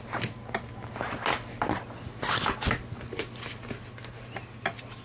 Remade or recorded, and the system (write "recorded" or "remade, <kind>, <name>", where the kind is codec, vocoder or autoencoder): recorded